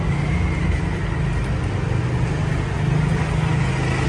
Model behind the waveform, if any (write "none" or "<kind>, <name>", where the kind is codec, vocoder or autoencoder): none